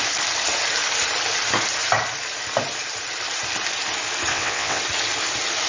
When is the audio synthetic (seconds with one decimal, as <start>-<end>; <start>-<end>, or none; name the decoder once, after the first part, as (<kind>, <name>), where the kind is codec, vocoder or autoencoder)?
4.3-4.8 (vocoder, WaveNeXt)